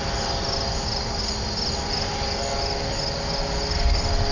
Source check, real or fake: real